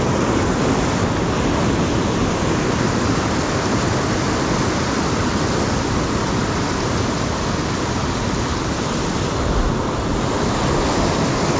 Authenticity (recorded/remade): recorded